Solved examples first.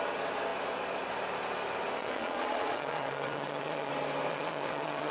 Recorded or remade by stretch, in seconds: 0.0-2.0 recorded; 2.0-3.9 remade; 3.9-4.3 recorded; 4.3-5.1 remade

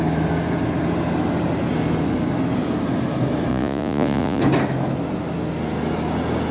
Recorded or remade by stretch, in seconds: 0.0-3.5 recorded; 3.5-4.4 remade; 4.4-6.5 recorded

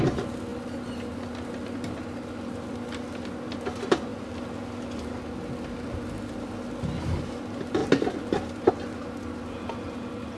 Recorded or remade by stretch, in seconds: 0.0-10.4 recorded

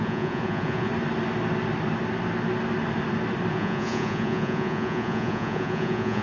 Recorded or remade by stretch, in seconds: 0.0-0.9 remade; 0.9-3.5 recorded; 3.5-6.2 remade